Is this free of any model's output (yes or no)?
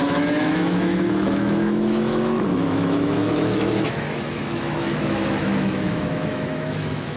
no